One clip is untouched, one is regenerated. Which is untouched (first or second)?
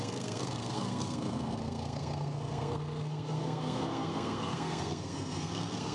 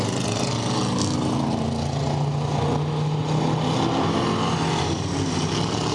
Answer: second